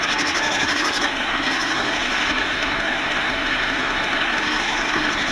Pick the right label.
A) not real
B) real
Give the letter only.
A